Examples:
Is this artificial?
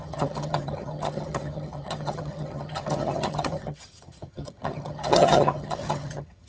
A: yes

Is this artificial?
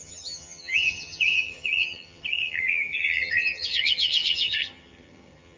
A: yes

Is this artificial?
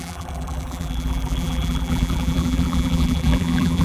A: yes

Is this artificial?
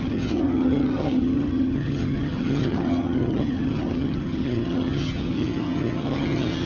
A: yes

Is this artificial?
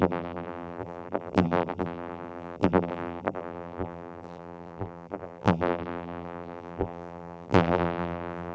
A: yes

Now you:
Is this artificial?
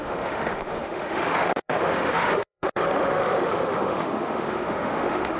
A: yes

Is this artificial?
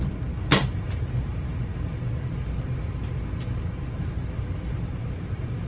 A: no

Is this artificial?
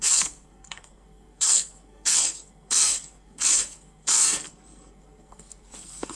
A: yes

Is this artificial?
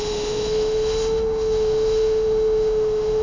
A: yes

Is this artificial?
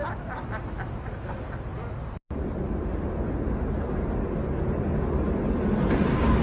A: no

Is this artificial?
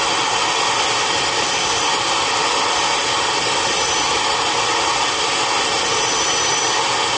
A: no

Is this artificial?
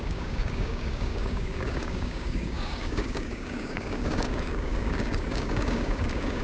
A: yes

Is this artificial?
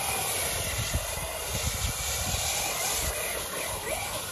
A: no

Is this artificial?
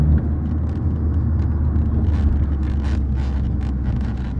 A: no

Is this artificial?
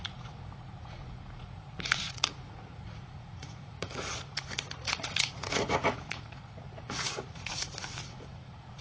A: yes